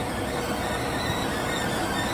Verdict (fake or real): real